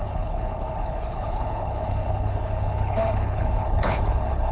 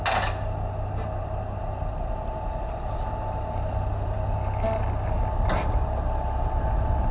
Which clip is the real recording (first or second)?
second